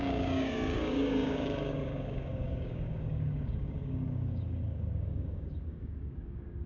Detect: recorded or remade remade